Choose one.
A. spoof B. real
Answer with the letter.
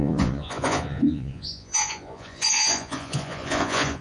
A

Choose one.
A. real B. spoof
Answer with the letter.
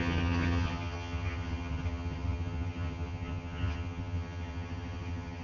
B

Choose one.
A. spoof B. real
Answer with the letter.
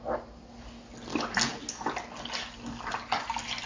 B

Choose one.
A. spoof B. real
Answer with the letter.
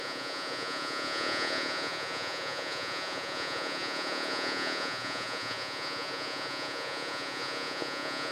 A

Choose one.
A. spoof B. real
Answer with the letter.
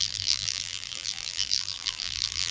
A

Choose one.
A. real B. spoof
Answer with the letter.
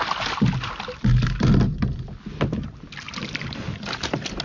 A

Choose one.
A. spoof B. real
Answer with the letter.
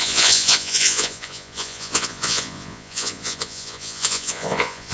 A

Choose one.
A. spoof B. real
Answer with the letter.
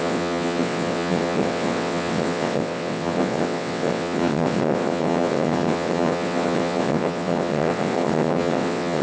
A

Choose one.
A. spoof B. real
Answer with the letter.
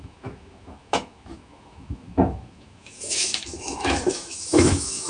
A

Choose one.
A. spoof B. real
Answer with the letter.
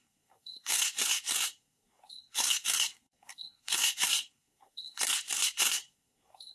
A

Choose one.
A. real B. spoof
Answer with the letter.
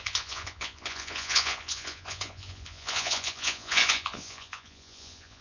B